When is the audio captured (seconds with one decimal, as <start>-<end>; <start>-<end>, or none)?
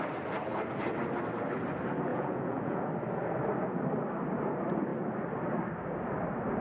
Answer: 0.0-2.1; 2.9-6.6